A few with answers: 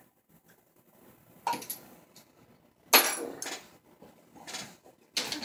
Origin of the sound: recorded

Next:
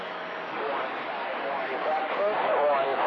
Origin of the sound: remade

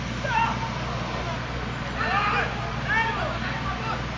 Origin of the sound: recorded